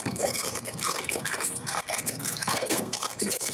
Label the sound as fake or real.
fake